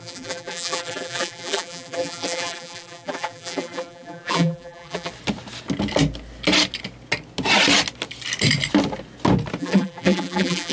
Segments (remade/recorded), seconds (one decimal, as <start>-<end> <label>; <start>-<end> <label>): 0.0-5.1 remade; 5.1-9.6 recorded; 9.6-10.7 remade

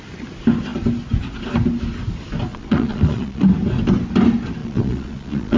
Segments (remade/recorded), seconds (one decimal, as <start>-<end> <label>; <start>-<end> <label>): 0.0-2.5 recorded; 2.5-3.4 remade; 3.4-4.6 recorded; 4.6-5.6 remade